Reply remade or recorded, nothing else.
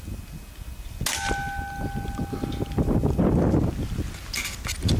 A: recorded